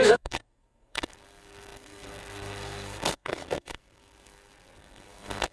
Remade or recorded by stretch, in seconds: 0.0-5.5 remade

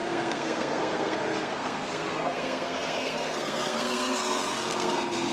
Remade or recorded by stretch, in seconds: 0.0-5.3 remade

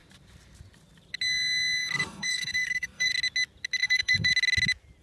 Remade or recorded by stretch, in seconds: 0.0-2.0 recorded; 2.0-3.1 remade; 3.1-3.8 recorded; 3.8-4.3 remade; 4.3-5.0 recorded

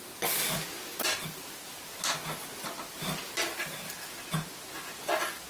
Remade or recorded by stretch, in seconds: 0.0-5.5 recorded

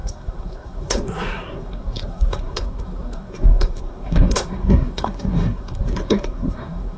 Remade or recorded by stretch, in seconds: 0.0-7.0 remade

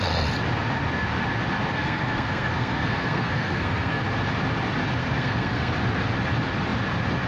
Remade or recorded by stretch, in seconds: 0.0-1.7 recorded; 1.7-4.0 remade; 4.0-5.0 recorded; 5.0-5.7 remade; 5.7-7.3 recorded

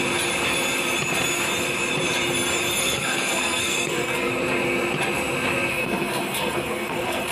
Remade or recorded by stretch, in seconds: 0.0-2.8 recorded; 2.8-4.3 remade; 4.3-5.7 recorded; 5.7-7.3 remade